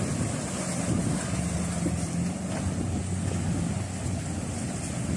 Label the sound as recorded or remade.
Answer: recorded